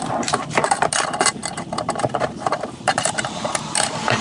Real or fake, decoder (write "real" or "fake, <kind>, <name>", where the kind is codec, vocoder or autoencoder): fake, vocoder, BigVGAN v2